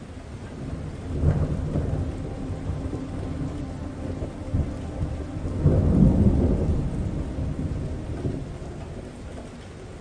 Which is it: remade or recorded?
recorded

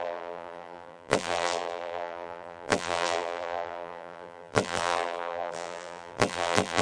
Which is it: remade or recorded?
remade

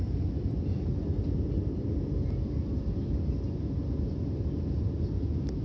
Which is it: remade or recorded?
recorded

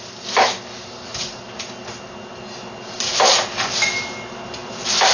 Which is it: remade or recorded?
recorded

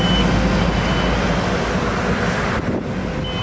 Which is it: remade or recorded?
recorded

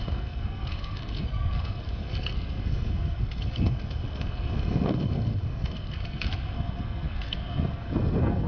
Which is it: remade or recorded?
remade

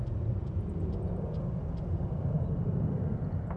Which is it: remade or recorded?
recorded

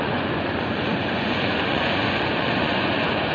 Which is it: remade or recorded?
remade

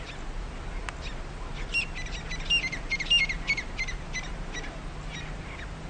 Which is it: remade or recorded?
recorded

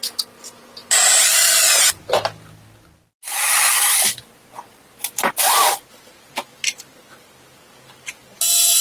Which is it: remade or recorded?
recorded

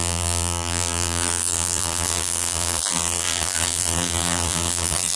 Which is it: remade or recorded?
remade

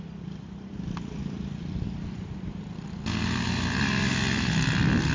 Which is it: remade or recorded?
recorded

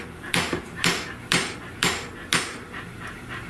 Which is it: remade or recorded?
remade